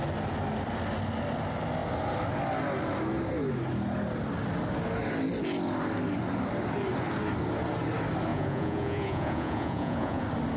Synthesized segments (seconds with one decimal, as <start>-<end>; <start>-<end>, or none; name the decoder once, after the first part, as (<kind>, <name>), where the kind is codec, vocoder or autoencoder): 8.3-10.2 (vocoder, Vocos)